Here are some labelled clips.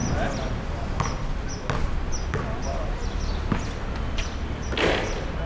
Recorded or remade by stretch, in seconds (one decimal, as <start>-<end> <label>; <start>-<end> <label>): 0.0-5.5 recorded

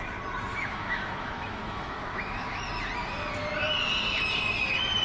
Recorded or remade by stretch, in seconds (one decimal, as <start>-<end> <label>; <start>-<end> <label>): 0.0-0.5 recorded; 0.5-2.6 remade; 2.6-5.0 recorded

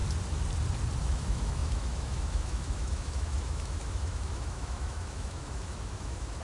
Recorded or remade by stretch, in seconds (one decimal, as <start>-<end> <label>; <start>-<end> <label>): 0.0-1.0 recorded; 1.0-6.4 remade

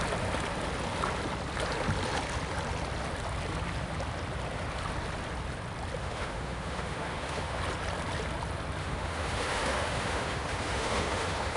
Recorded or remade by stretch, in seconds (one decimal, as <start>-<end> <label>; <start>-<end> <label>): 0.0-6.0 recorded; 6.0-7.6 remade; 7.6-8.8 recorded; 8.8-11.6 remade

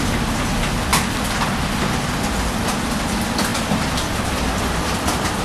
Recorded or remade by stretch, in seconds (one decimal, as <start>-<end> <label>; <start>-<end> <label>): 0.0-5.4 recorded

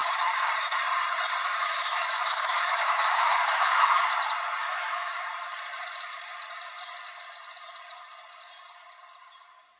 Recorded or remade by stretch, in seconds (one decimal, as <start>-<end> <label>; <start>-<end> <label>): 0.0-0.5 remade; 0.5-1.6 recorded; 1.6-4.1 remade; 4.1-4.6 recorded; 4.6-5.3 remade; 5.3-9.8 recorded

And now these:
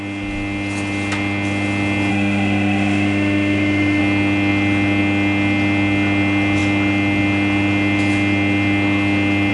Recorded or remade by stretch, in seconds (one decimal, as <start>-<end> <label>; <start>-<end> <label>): 0.0-2.1 recorded; 2.1-4.0 remade; 4.0-9.5 recorded